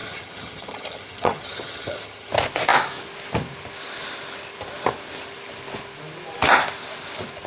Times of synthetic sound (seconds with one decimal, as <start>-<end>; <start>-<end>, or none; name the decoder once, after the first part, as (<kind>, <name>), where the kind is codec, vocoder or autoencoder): 0.0-2.3 (vocoder, HiFi-GAN)